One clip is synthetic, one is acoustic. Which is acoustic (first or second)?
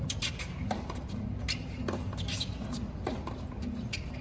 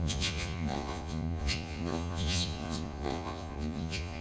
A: first